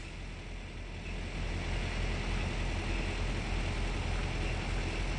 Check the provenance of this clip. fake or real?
real